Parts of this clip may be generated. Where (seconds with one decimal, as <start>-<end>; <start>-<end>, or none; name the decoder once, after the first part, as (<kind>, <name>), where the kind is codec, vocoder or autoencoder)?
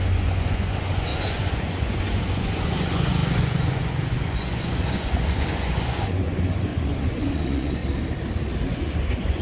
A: 0.0-7.8 (vocoder, Vocos); 8.7-9.4